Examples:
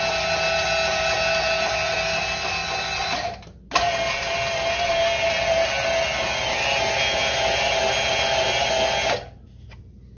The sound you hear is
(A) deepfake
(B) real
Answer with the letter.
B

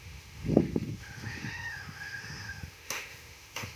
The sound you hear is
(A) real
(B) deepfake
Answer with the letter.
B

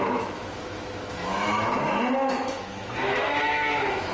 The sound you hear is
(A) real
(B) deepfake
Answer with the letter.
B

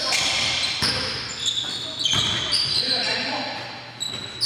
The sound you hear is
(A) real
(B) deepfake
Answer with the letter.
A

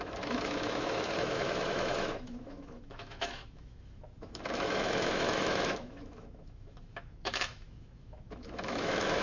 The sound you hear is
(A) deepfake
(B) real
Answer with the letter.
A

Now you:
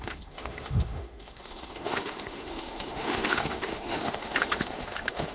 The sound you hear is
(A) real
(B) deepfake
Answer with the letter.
B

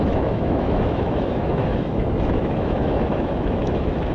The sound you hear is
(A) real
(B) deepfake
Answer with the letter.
B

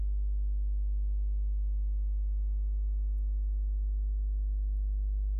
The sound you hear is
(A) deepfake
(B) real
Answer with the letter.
A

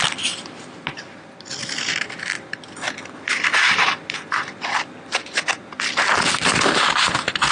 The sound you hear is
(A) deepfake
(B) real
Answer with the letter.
B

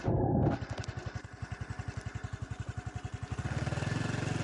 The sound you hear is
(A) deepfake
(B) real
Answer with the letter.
B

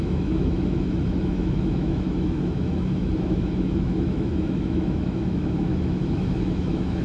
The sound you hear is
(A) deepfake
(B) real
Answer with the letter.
A